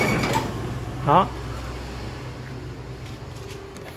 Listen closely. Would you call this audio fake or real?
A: real